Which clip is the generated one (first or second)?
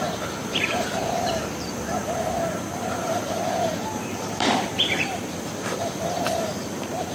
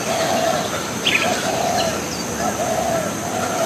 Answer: first